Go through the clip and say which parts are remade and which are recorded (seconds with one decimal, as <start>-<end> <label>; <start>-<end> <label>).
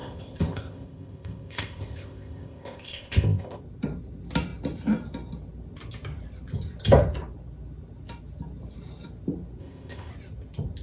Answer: 0.0-3.6 remade; 3.6-9.6 recorded; 9.6-10.1 remade; 10.1-10.8 recorded